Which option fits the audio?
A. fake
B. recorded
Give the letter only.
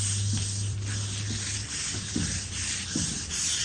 B